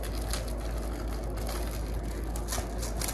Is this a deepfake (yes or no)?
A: no